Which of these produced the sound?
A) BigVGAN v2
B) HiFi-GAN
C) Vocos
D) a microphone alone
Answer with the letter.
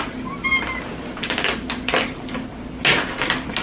D